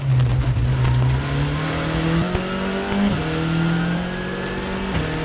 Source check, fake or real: real